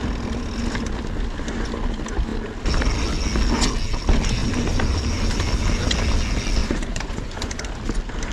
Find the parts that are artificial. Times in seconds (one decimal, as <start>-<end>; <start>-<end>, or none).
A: 6.6-7.6